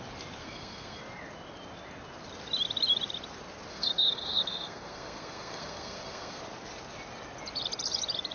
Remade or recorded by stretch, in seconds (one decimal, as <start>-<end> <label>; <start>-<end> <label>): 0.0-0.4 recorded; 0.4-1.0 remade; 1.0-3.7 recorded; 3.7-6.4 remade; 6.4-8.3 recorded